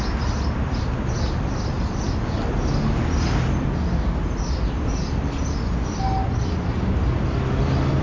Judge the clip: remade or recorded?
recorded